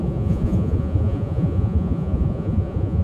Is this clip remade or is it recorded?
remade